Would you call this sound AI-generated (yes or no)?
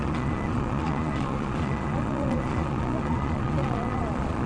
yes